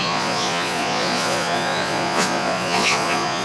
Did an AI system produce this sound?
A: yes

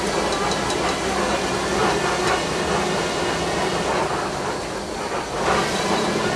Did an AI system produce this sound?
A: no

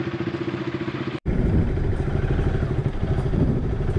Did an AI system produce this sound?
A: yes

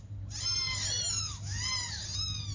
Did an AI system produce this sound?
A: no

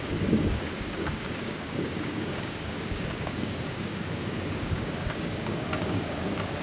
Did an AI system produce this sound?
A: yes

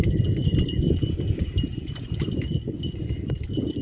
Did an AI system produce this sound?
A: no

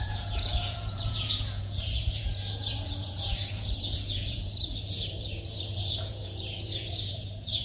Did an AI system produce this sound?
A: yes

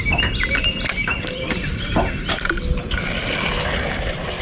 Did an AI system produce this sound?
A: no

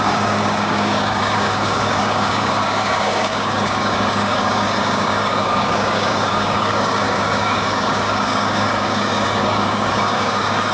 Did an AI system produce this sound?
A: yes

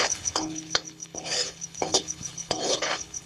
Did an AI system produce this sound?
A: yes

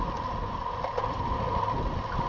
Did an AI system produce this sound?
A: no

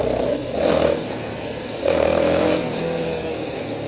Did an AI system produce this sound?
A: yes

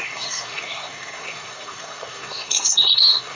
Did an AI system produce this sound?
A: yes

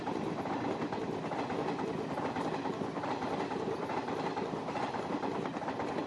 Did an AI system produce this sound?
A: yes